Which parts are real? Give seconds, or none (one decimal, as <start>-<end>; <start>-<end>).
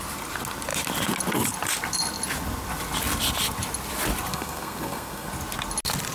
0.0-4.3; 5.3-6.1